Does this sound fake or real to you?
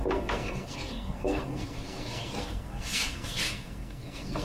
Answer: fake